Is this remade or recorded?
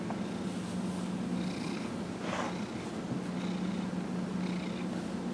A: recorded